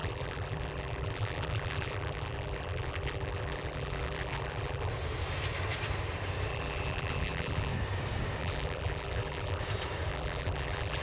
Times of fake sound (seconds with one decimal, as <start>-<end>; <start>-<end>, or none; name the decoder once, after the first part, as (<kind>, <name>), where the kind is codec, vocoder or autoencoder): 0.0-4.9 (vocoder, BigVGAN v2); 6.5-7.7; 8.4-9.6; 10.1-11.0

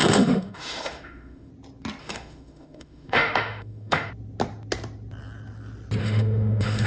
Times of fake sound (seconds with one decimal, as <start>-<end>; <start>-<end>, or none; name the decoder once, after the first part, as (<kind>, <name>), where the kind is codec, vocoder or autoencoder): 0.0-1.5 (autoencoder, DAC-VAE); 2.0-4.1; 6.0-6.9

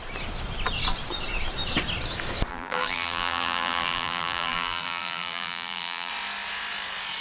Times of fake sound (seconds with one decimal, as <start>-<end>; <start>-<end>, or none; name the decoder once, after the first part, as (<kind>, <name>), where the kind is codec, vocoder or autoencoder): 2.5-6.1 (vocoder, BigVGAN v2)

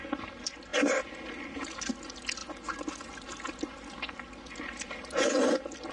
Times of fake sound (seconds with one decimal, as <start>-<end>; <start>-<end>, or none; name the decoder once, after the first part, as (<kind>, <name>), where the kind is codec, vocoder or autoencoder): none